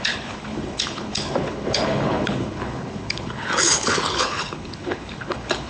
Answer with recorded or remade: remade